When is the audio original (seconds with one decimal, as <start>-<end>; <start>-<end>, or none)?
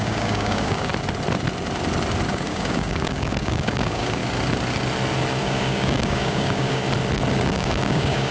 0.9-2.3; 4.2-5.4; 6.8-7.3